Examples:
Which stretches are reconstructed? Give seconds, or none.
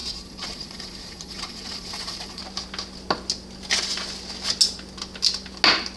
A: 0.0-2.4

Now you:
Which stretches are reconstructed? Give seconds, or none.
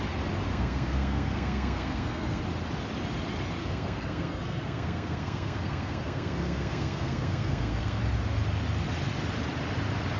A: 0.5-2.4; 3.6-8.0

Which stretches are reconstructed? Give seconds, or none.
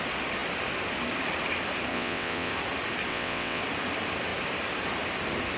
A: 1.9-2.5; 3.1-3.6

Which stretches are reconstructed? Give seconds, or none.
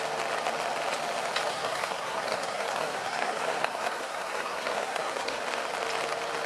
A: 1.5-5.4